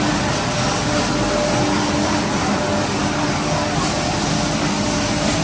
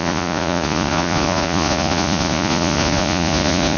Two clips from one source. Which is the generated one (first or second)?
second